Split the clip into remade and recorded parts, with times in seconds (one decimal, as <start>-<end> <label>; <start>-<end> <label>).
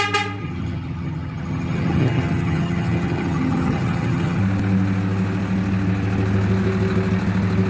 0.0-0.4 recorded; 0.4-4.4 remade; 4.4-7.7 recorded